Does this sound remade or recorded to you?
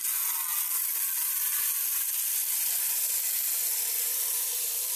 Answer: recorded